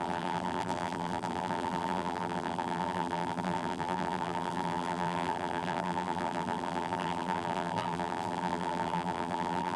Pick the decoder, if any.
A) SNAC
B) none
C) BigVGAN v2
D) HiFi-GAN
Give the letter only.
C